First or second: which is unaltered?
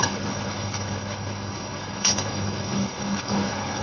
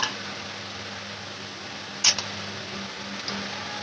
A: second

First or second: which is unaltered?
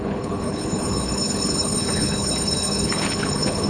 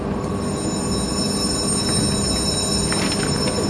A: second